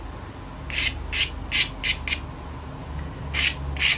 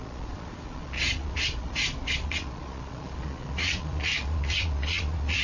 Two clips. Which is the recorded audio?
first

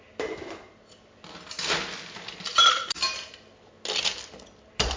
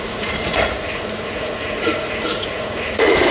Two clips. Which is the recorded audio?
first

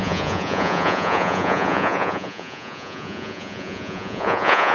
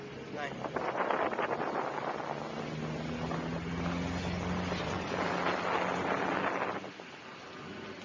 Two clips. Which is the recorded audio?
second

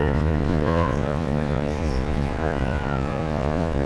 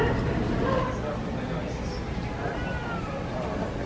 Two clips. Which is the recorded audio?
second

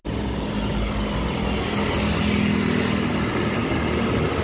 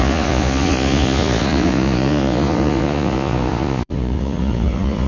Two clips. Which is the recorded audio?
first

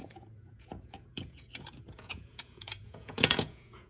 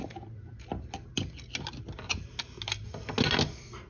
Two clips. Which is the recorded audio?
second